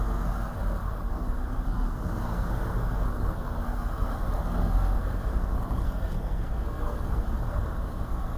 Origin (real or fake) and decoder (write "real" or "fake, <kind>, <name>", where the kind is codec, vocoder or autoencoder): fake, codec, SNAC